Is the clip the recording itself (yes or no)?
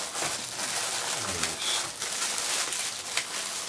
yes